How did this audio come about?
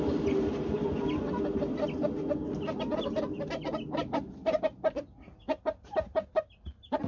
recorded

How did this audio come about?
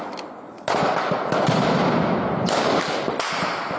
recorded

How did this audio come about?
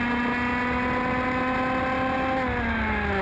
recorded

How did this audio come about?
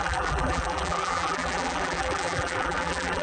remade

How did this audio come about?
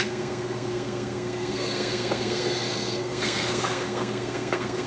remade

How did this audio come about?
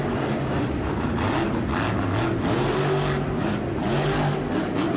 recorded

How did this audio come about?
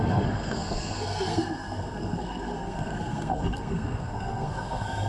remade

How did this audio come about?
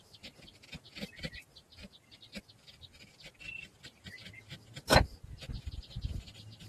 recorded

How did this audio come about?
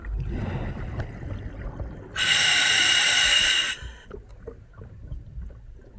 recorded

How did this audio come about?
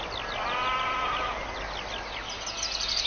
recorded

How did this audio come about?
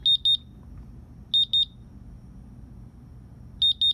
recorded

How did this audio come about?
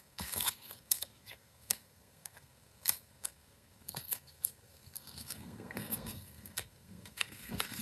remade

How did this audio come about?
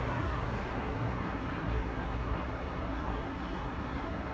remade